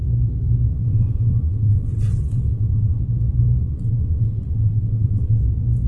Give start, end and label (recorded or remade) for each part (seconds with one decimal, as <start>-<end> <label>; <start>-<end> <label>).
0.0-0.7 recorded; 0.7-3.0 remade; 3.0-3.6 recorded; 3.6-5.4 remade; 5.4-5.9 recorded